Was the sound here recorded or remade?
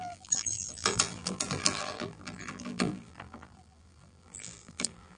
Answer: remade